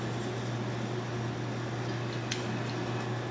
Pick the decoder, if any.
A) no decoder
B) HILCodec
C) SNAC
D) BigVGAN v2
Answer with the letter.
A